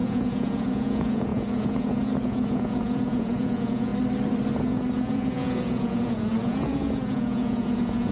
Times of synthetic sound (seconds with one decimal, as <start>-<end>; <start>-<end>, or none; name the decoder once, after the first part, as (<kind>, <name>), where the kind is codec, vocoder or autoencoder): 0.0-3.9 (vocoder, Vocos); 4.6-8.1